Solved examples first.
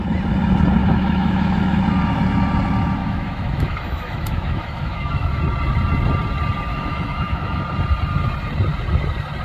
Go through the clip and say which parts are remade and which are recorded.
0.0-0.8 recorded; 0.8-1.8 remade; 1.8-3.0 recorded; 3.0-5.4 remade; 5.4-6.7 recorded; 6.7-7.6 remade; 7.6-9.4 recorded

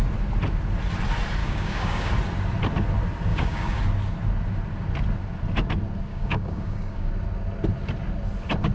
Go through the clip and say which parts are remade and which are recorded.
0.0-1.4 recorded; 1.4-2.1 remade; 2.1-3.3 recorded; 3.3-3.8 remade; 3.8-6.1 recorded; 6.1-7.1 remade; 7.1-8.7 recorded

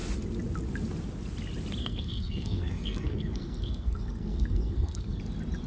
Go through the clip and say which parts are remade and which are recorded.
0.0-1.8 recorded; 1.8-5.2 remade; 5.2-5.7 recorded

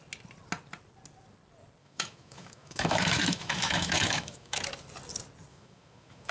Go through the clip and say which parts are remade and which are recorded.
0.0-1.8 recorded; 1.8-4.6 remade; 4.6-5.5 recorded; 5.5-6.3 remade

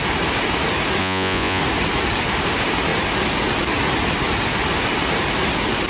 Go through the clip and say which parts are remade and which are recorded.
0.0-1.0 recorded; 1.0-1.6 remade; 1.6-5.9 recorded

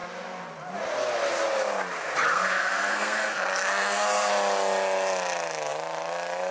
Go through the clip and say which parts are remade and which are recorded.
0.0-2.3 recorded; 2.3-4.3 remade; 4.3-6.5 recorded